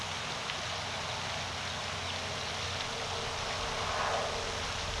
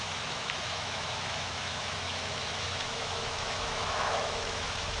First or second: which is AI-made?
second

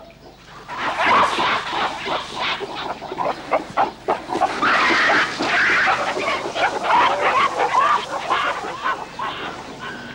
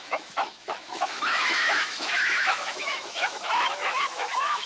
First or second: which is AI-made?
second